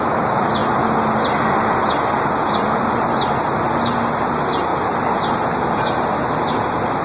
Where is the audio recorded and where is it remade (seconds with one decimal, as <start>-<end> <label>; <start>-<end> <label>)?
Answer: 0.0-0.6 remade; 0.6-2.3 recorded; 2.3-2.8 remade; 2.8-4.1 recorded; 4.1-4.7 remade; 4.7-5.4 recorded; 5.4-7.0 remade